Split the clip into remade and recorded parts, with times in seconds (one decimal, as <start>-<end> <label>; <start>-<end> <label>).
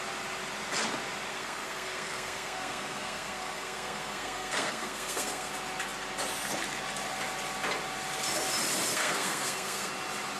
0.0-1.3 recorded; 1.3-5.5 remade; 5.5-8.9 recorded; 8.9-9.9 remade; 9.9-10.4 recorded